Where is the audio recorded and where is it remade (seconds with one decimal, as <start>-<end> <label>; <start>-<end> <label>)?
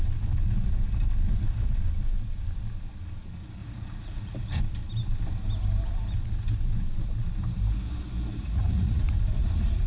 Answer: 0.0-3.6 recorded; 3.6-4.6 remade; 4.6-8.3 recorded; 8.3-9.9 remade